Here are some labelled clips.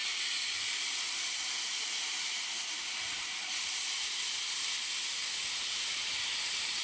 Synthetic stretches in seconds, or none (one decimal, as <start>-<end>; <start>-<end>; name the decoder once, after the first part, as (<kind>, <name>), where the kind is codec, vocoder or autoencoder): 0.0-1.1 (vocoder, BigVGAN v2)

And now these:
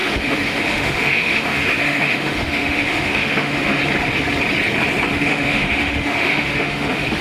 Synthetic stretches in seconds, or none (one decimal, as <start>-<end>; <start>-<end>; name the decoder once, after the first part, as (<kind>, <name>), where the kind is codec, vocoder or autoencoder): 0.0-3.8 (autoencoder, DAC-VAE); 5.1-7.2

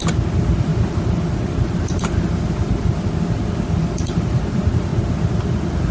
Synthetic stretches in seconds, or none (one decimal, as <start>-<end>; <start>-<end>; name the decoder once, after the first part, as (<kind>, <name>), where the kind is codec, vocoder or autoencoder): none